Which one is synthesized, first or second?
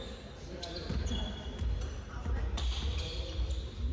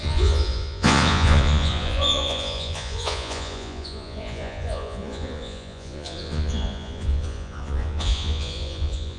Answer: second